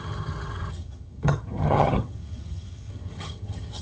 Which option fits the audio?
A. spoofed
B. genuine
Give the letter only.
A